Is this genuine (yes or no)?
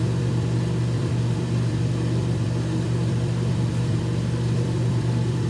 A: no